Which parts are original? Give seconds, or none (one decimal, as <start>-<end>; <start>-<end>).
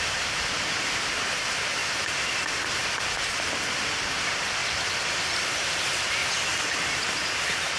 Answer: 1.8-3.4; 4.6-5.8; 6.2-6.9